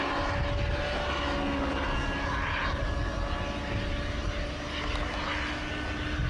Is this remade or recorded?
recorded